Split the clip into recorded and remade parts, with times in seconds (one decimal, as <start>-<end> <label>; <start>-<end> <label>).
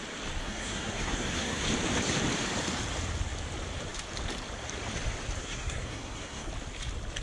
0.0-0.4 recorded; 0.4-1.6 remade; 1.6-5.4 recorded; 5.4-6.5 remade; 6.5-7.2 recorded